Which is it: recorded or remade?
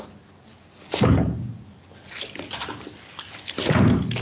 recorded